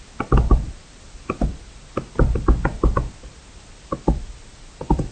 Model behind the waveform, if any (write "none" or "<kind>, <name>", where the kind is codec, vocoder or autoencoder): none